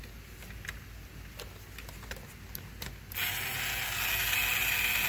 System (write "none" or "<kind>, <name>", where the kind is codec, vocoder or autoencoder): none